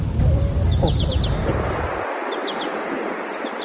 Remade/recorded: recorded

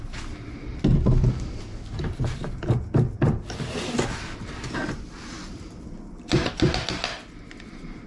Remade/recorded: recorded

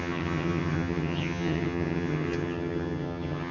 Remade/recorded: remade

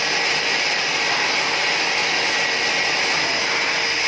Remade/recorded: recorded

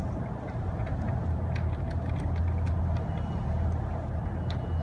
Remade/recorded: recorded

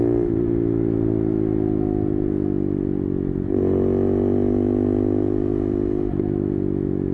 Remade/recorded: recorded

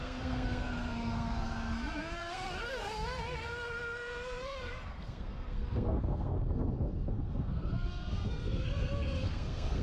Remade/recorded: remade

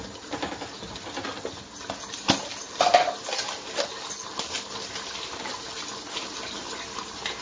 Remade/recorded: recorded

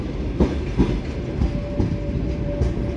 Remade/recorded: recorded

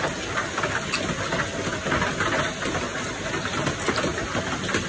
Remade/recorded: recorded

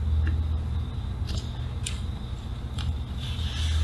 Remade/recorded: recorded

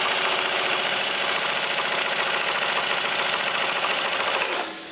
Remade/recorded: recorded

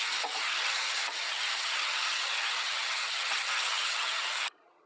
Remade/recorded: remade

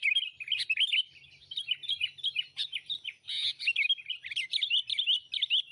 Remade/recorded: recorded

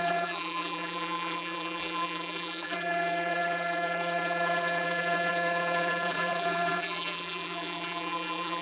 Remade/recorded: remade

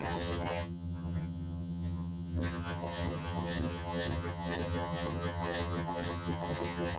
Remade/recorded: remade